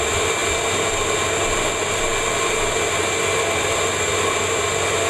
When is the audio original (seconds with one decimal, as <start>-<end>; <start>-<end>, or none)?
0.0-5.1